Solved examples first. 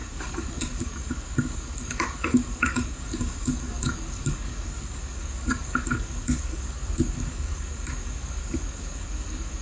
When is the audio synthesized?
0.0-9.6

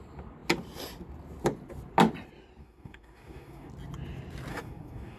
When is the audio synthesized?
2.6-3.7; 4.5-5.2

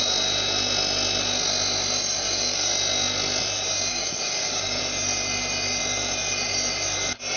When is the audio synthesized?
2.2-2.7; 3.9-4.8

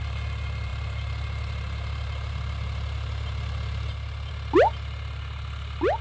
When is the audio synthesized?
none

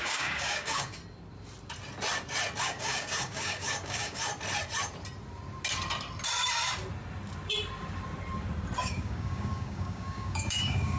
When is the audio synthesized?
0.0-1.0; 2.6-4.3; 8.8-11.0

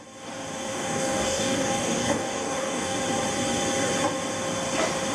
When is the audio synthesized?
0.7-3.0

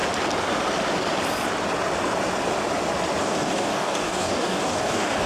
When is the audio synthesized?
3.2-5.3